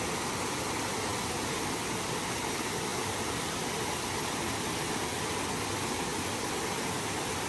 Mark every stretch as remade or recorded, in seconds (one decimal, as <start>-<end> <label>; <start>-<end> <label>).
0.0-7.5 recorded